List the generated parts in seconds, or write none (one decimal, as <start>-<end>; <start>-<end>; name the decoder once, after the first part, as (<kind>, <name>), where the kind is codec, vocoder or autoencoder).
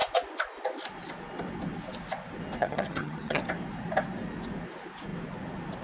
2.6-3.4 (vocoder, HiFi-GAN)